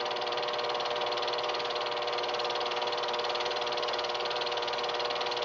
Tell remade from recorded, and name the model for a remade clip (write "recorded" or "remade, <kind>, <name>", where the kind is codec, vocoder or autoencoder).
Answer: recorded